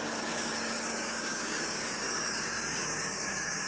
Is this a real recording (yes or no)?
no